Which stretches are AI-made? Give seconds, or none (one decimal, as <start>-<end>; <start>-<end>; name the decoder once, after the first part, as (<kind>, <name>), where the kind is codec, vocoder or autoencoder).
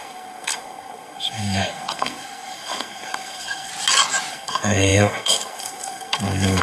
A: 0.0-3.7 (codec, SNAC); 4.3-6.6